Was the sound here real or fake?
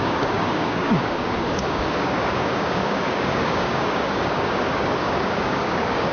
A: fake